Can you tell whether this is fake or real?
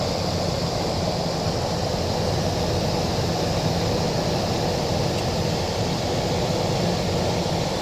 real